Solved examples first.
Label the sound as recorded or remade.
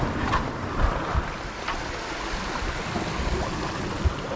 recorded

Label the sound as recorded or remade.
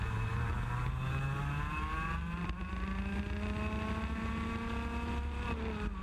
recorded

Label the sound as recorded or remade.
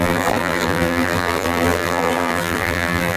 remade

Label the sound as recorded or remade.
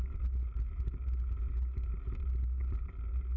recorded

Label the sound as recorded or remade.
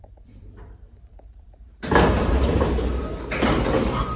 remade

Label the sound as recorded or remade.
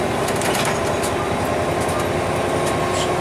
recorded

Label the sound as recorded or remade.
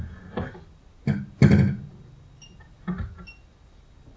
recorded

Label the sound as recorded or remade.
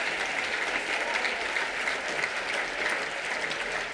recorded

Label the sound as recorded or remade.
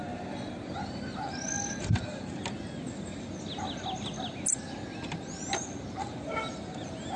recorded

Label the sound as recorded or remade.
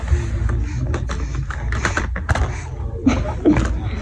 recorded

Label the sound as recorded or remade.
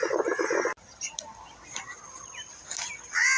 recorded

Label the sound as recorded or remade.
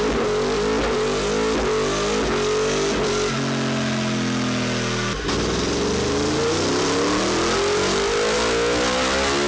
recorded